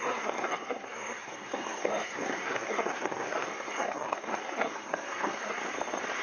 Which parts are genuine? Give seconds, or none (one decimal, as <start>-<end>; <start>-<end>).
5.6-6.2

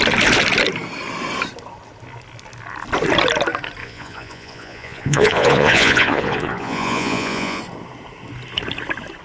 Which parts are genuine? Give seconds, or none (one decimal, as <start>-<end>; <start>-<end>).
0.0-3.8; 7.6-9.2